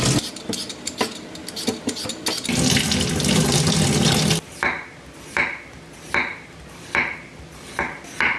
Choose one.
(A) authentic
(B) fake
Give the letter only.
A